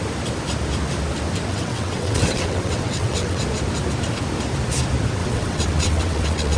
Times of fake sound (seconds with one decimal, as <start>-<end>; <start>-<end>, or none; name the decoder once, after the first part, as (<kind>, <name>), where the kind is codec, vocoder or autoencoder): 1.5-3.4 (vocoder, WaveNeXt); 5.2-6.6